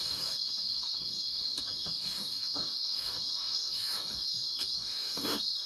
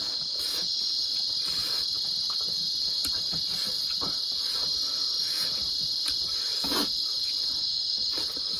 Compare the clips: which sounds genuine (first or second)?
second